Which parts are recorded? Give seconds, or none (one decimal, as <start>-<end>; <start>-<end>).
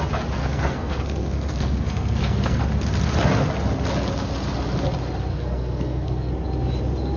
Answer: 0.0-0.4; 2.6-5.3; 6.3-7.2